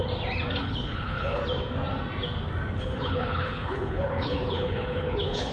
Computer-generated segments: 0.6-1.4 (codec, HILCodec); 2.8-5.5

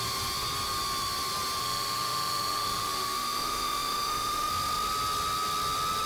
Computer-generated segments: 1.6-4.5 (autoencoder, DAC-VAE)

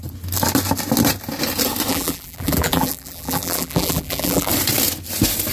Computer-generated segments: 1.9-4.5 (vocoder, BigVGAN v2)